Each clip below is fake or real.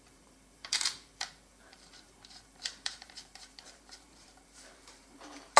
fake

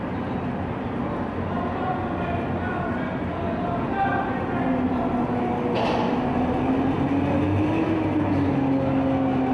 real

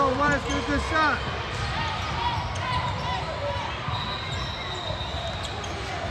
real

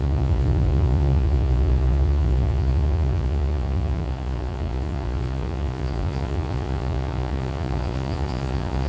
fake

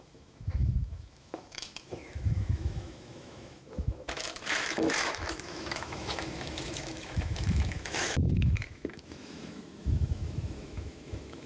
fake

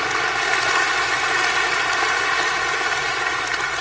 real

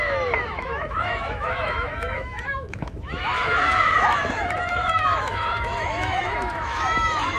fake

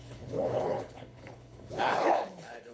fake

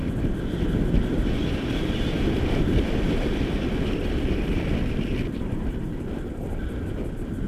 fake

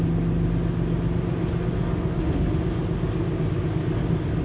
real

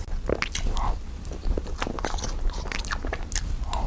real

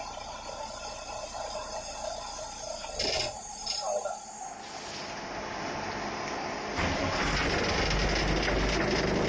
real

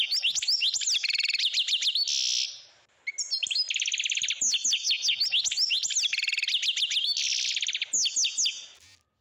real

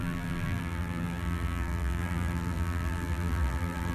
fake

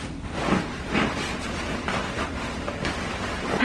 real